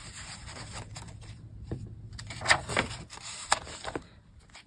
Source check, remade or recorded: remade